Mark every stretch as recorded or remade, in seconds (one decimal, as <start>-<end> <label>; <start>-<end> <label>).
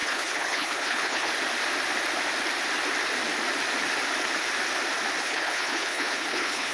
0.0-1.3 remade; 1.3-5.2 recorded; 5.2-6.7 remade